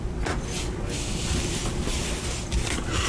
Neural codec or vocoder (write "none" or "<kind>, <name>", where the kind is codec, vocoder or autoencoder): none